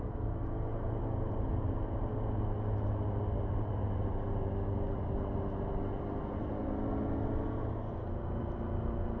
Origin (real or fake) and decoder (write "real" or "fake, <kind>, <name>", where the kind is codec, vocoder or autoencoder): real